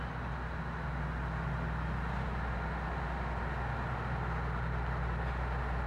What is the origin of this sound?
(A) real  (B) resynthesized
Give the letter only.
A